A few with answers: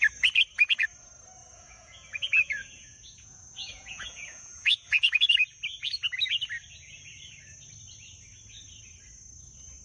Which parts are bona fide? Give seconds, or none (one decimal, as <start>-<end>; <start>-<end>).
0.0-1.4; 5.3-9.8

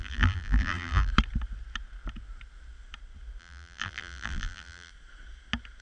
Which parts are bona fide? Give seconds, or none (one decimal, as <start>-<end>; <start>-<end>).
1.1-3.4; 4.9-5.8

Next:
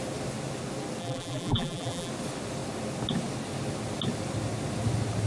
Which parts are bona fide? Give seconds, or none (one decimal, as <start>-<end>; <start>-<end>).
0.0-1.0; 2.1-5.3